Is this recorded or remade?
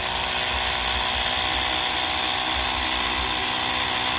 recorded